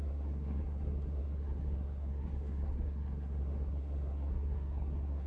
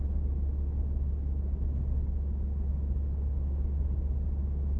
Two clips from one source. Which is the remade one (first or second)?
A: first